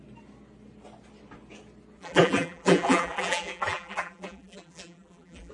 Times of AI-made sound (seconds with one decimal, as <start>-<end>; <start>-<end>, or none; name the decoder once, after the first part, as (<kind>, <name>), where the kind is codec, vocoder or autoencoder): 2.0-5.5 (vocoder, BigVGAN v2)